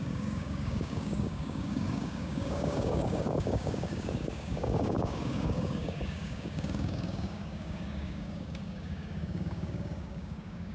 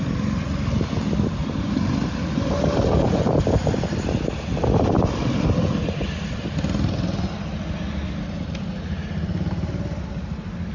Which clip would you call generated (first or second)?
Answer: first